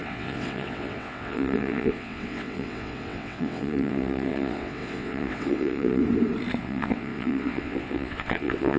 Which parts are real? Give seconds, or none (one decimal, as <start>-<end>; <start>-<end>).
6.0-6.6